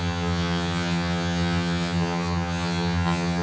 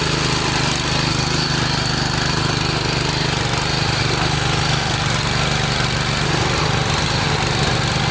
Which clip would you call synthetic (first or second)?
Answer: first